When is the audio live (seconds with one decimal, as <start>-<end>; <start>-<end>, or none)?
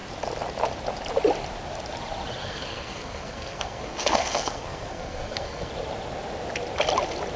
0.0-2.4; 5.7-7.4